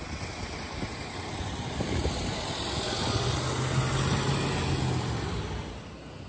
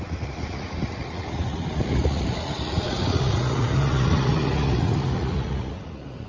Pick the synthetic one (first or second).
second